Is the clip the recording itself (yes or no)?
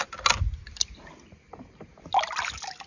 yes